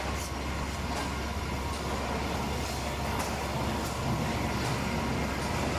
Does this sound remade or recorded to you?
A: recorded